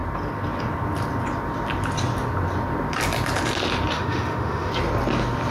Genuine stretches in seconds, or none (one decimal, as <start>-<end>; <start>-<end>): 0.0-3.9; 4.7-5.5